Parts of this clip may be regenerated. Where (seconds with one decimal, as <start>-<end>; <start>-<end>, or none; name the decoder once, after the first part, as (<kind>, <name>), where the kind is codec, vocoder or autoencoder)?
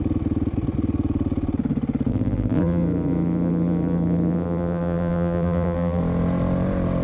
2.1-6.0 (vocoder, BigVGAN v2)